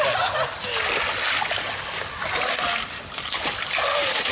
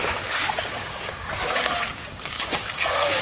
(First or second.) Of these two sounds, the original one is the first